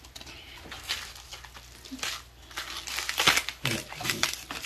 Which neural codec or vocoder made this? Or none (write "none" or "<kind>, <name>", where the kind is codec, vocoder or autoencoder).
none